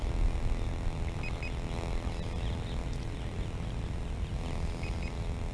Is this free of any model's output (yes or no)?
yes